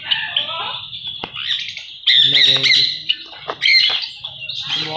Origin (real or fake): real